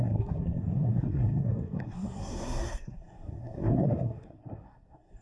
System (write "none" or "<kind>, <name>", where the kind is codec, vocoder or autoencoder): codec, SNAC